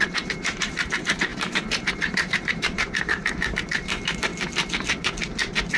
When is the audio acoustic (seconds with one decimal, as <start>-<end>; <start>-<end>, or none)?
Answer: 4.3-5.8